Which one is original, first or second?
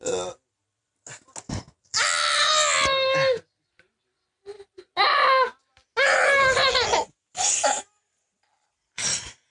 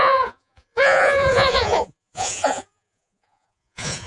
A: first